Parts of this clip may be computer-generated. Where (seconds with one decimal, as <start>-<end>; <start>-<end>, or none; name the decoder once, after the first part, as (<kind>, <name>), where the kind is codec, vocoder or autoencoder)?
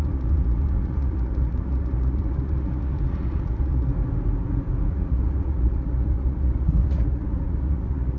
0.0-3.9 (vocoder, Vocos); 4.9-8.2